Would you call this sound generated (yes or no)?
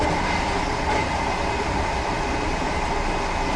no